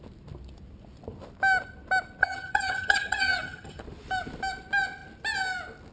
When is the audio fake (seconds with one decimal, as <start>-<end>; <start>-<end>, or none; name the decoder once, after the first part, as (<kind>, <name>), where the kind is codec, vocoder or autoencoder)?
2.2-3.8 (vocoder, HiFi-GAN)